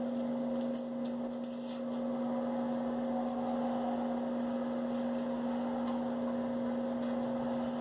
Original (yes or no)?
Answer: yes